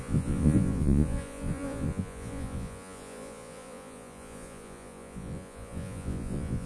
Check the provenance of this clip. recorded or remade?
remade